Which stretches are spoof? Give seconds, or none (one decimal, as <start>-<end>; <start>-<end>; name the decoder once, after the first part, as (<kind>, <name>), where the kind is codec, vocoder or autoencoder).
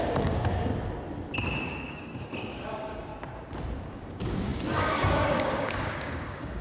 0.0-0.7 (codec, DAC); 1.6-3.1; 3.9-6.6